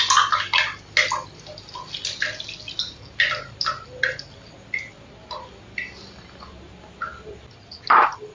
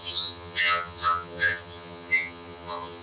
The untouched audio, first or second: first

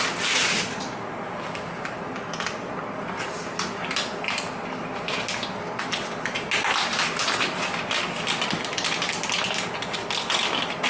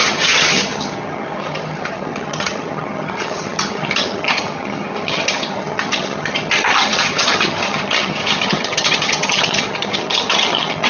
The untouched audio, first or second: first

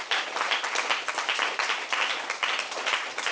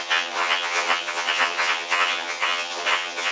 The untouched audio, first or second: first